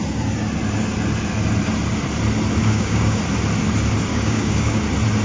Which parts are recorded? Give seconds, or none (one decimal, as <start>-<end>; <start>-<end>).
0.0-2.6; 3.2-4.1; 4.8-5.2

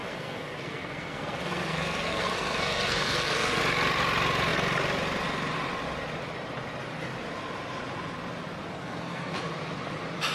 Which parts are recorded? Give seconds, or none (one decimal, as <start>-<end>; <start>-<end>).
3.6-8.8; 9.4-10.3